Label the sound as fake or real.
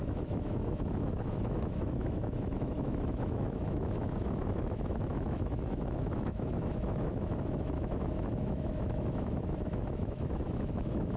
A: fake